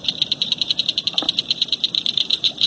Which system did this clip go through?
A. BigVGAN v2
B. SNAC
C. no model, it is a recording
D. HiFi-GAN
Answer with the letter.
A